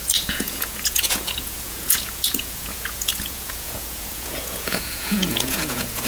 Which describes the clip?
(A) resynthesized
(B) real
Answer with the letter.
A